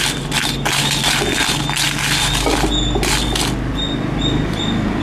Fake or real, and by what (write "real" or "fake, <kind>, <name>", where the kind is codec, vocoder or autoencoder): real